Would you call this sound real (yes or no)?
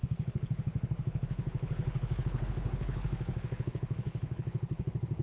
no